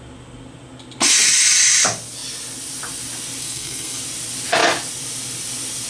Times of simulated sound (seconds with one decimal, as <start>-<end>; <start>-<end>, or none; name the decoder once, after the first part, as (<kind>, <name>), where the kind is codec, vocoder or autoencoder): 3.4-4.0 (codec, SNAC)